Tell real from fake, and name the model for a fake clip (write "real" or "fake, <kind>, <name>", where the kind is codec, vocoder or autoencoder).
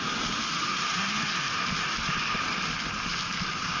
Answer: real